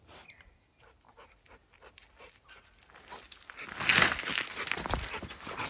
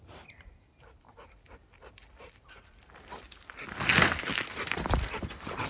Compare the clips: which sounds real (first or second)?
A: first